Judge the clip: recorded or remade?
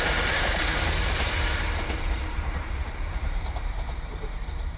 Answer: remade